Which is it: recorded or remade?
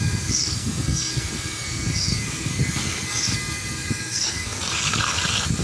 remade